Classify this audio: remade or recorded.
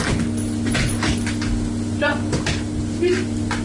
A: recorded